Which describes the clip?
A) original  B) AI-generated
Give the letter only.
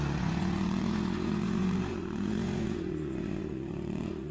B